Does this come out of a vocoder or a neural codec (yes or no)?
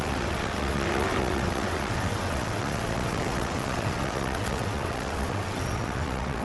yes